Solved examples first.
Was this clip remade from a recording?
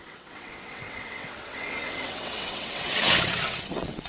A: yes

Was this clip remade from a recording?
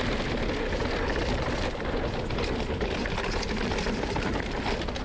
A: no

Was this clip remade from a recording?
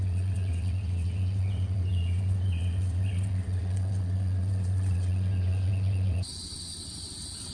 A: yes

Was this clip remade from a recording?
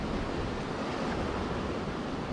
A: no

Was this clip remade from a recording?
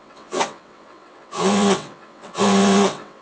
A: yes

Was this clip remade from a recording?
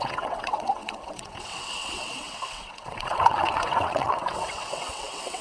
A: yes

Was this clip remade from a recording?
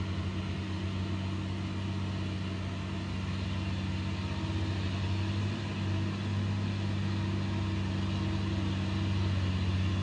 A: no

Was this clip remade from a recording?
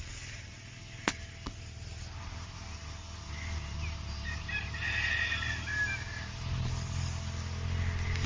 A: no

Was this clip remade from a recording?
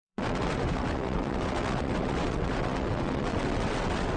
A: yes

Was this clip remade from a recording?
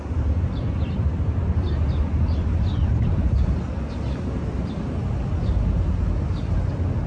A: no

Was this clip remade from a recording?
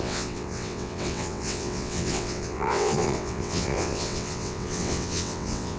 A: yes